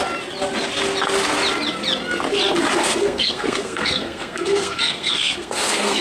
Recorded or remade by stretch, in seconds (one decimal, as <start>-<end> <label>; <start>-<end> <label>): 0.0-2.8 recorded; 2.8-6.0 remade